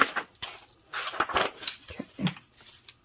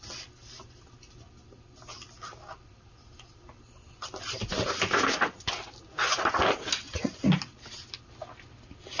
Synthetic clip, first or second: first